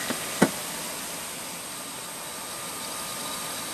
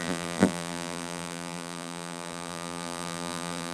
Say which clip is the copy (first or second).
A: second